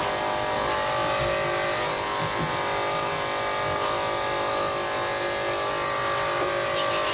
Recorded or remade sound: recorded